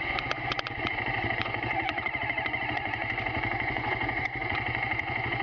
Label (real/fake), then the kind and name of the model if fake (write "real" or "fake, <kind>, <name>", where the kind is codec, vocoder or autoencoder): fake, vocoder, Vocos